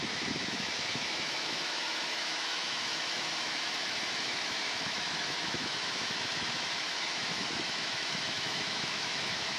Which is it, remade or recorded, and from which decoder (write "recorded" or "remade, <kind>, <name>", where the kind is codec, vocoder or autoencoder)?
remade, autoencoder, DAC-VAE